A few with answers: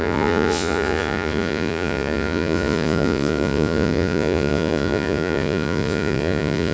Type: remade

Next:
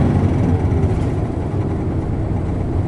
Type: recorded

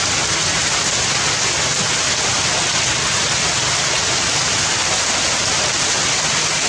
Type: recorded